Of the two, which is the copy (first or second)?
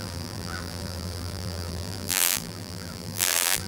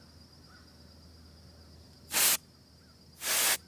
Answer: first